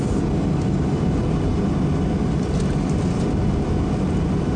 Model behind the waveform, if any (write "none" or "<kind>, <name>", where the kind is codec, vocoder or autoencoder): none